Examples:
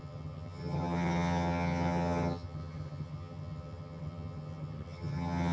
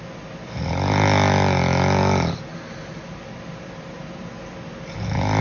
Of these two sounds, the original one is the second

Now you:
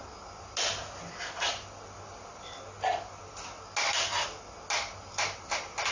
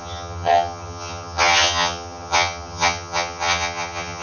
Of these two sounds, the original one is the first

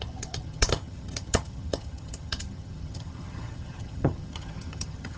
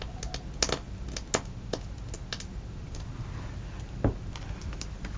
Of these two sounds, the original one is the second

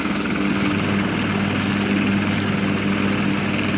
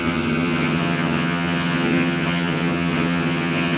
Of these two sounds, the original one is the first